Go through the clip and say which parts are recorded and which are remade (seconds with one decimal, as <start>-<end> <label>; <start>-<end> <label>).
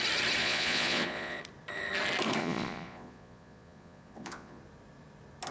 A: 0.0-0.4 recorded; 0.4-1.4 remade; 1.4-2.4 recorded; 2.4-4.6 remade; 4.6-5.5 recorded